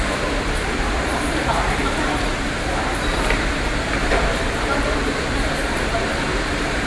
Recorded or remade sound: remade